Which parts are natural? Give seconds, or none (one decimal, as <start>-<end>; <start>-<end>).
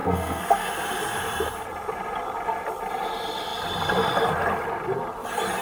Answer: 0.7-5.6